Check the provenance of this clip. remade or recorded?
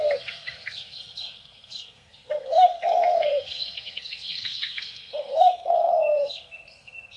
remade